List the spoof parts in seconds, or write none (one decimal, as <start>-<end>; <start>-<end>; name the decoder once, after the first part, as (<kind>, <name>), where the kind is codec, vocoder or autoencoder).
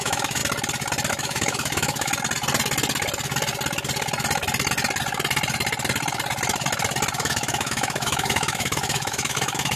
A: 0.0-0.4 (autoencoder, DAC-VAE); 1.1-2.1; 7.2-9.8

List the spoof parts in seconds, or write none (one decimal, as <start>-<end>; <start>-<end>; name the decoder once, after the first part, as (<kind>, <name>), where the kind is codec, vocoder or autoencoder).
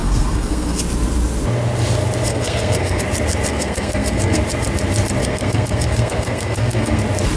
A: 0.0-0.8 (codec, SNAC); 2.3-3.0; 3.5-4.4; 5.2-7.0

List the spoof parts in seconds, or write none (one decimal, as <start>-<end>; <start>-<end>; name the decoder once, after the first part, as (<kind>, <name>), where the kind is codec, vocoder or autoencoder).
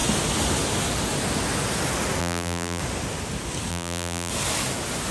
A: 2.2-2.8 (vocoder, BigVGAN v2); 3.7-4.3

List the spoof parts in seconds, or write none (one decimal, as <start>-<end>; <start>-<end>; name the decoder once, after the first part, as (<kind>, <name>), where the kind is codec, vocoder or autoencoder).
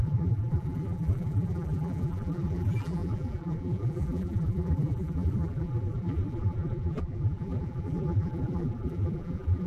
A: 0.0-9.7 (vocoder, BigVGAN v2)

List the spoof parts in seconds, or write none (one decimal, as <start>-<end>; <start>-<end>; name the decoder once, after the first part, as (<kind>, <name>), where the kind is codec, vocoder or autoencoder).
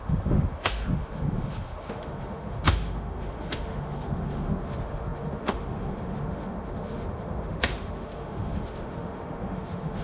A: 0.0-10.0 (autoencoder, DAC-VAE)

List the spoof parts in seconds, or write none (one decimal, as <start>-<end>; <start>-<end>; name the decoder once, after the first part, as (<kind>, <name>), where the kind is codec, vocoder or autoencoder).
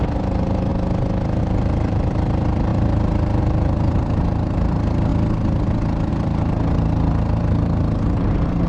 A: 0.0-0.7 (vocoder, BigVGAN v2); 1.4-5.1; 6.1-8.7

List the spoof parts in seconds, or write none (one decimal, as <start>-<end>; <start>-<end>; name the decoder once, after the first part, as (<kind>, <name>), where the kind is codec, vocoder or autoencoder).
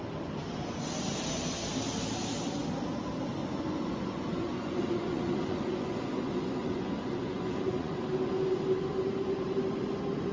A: 3.4-8.0 (vocoder, Vocos)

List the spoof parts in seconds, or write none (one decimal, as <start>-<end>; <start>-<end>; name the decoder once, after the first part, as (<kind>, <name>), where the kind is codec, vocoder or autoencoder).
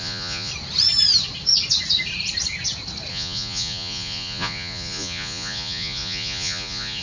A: 0.0-0.5 (vocoder, Vocos); 3.1-7.0